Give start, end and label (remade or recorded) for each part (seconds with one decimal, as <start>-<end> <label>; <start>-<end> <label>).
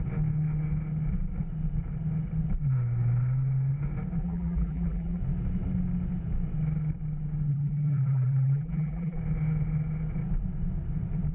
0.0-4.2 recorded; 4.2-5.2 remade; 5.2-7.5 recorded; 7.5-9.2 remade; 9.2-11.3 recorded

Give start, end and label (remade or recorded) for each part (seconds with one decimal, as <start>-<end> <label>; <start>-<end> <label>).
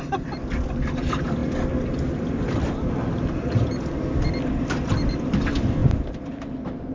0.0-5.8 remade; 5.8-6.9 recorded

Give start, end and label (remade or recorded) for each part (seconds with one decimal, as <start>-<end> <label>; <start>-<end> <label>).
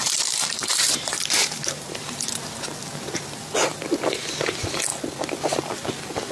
0.0-0.6 recorded; 0.6-2.3 remade; 2.3-6.3 recorded